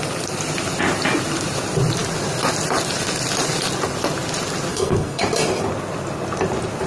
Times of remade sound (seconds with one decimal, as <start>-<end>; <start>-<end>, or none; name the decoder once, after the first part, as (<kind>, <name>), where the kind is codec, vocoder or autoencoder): 4.7-5.2 (codec, SNAC)